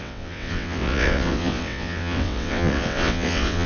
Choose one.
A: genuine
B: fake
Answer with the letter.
B